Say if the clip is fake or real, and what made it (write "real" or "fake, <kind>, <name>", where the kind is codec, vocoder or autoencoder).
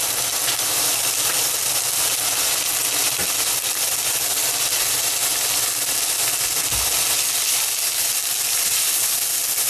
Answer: real